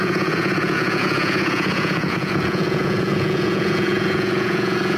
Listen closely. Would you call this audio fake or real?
fake